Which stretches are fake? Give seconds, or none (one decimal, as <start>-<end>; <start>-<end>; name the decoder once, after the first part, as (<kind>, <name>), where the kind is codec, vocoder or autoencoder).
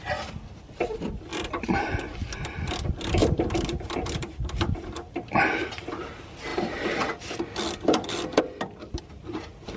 1.3-2.0 (vocoder, BigVGAN v2); 3.2-5.9